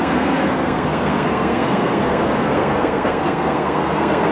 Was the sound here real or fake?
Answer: fake